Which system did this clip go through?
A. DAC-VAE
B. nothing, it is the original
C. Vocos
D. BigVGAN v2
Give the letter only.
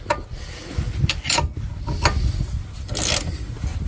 B